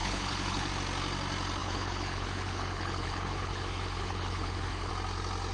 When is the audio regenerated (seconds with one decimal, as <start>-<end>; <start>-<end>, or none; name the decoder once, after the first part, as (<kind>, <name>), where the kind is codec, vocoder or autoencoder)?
0.0-0.7 (codec, HILCodec); 1.6-4.9